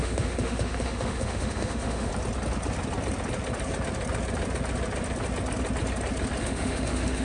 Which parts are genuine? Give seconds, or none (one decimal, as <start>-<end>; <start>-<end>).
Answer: 2.1-6.4